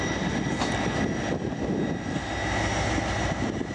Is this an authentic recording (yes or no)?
yes